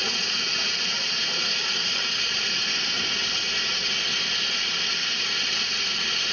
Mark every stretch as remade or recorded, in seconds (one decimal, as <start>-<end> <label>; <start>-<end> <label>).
0.0-6.3 recorded